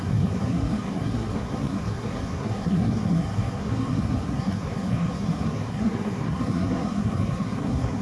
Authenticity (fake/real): fake